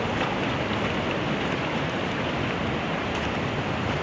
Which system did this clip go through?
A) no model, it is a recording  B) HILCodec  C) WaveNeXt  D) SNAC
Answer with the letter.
A